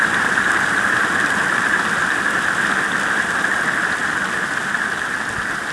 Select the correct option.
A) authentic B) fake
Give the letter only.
A